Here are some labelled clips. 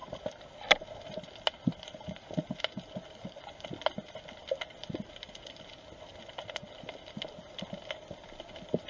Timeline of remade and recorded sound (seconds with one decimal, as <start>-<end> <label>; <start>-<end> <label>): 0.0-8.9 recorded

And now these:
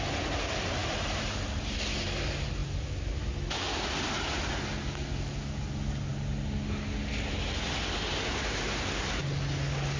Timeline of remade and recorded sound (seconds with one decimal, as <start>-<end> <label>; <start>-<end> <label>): 0.0-0.8 recorded; 0.8-1.9 remade; 1.9-10.0 recorded

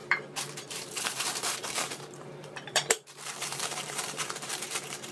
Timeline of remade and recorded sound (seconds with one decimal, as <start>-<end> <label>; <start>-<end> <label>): 0.0-5.1 remade

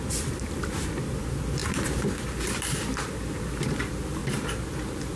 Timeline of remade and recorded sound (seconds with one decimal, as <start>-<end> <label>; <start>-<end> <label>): 0.0-4.2 remade; 4.2-4.7 recorded; 4.7-5.2 remade